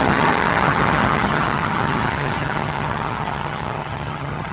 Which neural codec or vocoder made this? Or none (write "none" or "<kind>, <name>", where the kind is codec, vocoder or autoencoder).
vocoder, HiFi-GAN